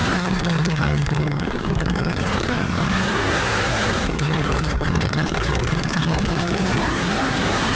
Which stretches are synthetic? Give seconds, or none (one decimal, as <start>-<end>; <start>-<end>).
0.0-7.8